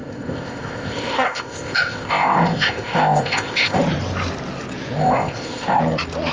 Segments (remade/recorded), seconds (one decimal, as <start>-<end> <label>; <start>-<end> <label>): 0.0-3.8 remade; 3.8-5.0 recorded; 5.0-5.8 remade; 5.8-6.3 recorded